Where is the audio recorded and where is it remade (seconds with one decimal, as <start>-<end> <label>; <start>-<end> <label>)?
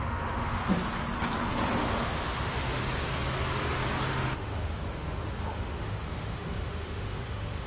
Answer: 0.0-0.6 remade; 0.6-1.8 recorded; 1.8-2.8 remade; 2.8-4.1 recorded; 4.1-7.7 remade